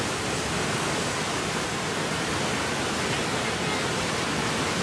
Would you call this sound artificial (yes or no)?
no